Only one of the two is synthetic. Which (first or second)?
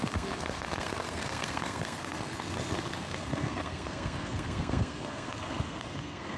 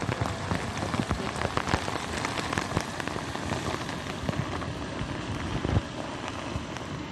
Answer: first